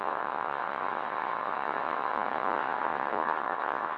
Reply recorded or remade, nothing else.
remade